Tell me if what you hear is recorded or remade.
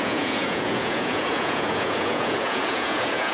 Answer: remade